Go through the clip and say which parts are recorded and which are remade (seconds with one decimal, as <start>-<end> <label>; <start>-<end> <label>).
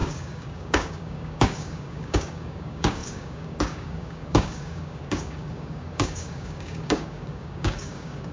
0.0-8.3 remade